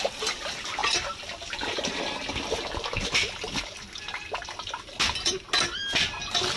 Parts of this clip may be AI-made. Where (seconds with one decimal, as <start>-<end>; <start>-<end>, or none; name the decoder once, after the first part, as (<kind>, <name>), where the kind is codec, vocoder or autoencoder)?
none